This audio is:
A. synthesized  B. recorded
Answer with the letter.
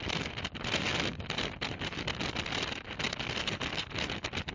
B